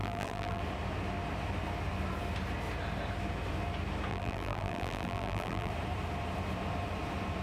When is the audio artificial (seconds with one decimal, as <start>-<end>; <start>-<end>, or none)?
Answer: 0.0-0.6; 4.1-5.7